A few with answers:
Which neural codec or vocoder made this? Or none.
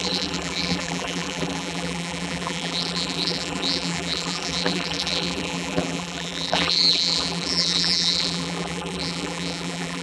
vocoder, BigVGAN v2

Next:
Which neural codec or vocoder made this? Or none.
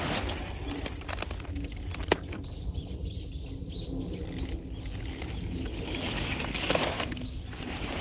none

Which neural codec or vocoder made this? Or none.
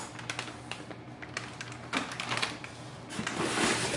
none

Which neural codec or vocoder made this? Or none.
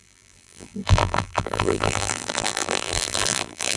vocoder, BigVGAN v2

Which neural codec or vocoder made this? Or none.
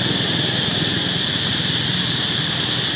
none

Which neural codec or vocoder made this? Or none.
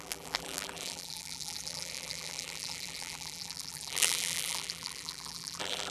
vocoder, BigVGAN v2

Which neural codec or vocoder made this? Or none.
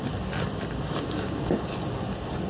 none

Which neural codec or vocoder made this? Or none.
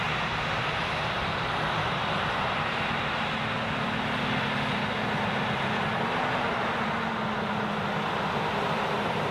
none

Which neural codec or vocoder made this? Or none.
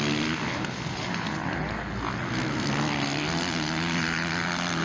none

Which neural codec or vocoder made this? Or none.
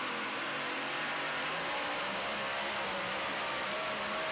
vocoder, BigVGAN v2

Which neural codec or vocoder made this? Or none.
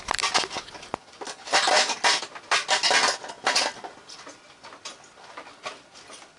none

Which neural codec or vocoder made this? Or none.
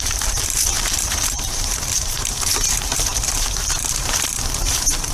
vocoder, BigVGAN v2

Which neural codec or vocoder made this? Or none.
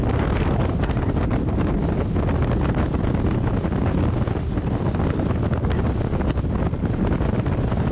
none